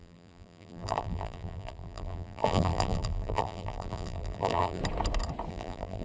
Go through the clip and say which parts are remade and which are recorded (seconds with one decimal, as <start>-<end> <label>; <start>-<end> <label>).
0.0-4.8 remade; 4.8-5.5 recorded; 5.5-6.0 remade